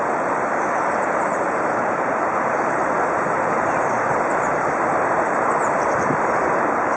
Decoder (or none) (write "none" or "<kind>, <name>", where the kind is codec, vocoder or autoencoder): vocoder, BigVGAN v2